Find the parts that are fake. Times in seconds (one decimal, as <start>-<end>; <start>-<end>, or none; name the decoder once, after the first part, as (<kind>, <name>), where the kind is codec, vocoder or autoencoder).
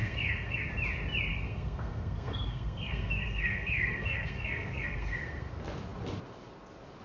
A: 0.0-0.7 (codec, SNAC); 1.3-5.5